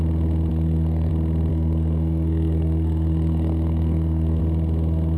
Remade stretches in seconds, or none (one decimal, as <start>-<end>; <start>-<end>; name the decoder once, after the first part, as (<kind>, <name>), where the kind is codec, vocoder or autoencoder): 0.5-1.1 (codec, SNAC); 1.5-4.4